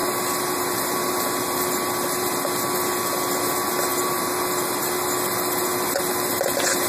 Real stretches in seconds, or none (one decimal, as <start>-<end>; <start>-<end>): 3.5-6.9